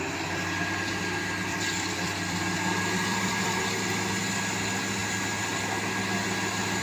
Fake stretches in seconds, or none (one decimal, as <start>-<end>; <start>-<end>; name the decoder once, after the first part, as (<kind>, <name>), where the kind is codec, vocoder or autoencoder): 1.5-3.6 (vocoder, BigVGAN v2)